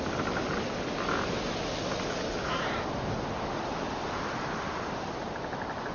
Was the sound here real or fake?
real